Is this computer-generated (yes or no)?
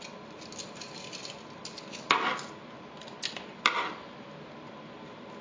no